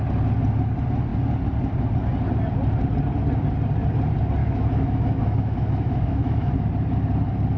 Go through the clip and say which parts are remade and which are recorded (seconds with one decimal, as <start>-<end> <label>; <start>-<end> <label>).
0.0-4.4 recorded; 4.4-6.7 remade; 6.7-7.6 recorded